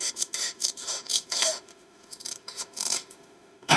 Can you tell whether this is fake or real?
fake